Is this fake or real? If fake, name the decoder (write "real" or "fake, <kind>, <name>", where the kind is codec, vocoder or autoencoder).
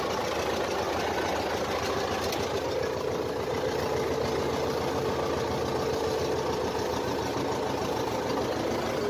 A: real